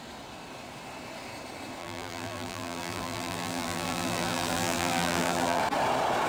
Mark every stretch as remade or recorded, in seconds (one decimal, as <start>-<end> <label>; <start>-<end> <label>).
0.0-1.8 recorded; 1.8-5.6 remade; 5.6-6.3 recorded